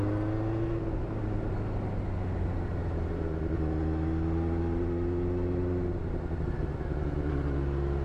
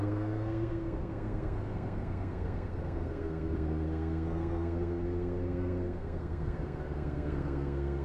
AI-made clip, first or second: second